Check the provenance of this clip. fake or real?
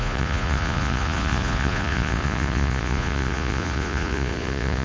fake